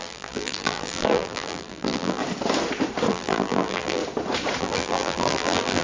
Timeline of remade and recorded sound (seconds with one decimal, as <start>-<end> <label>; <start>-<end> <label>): 0.0-2.2 remade; 2.2-3.1 recorded; 3.1-4.0 remade; 4.0-4.6 recorded; 4.6-5.8 remade